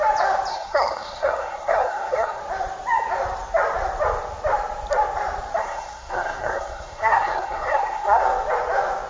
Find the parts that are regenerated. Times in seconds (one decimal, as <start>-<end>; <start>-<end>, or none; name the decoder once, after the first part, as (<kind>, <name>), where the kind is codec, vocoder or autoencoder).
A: 0.5-2.4 (codec, SNAC); 5.6-8.2